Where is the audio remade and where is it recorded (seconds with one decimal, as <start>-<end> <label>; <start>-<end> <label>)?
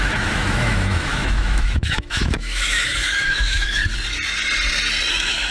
0.0-3.8 remade; 3.8-5.1 recorded; 5.1-5.5 remade